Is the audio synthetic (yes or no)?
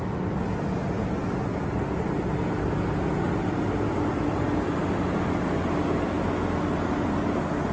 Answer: no